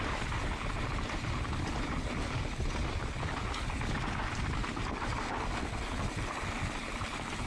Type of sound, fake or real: real